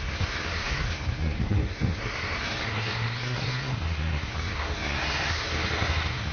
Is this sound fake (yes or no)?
yes